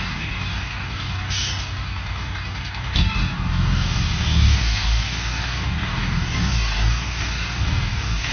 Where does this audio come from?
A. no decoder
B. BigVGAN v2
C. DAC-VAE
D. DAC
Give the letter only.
D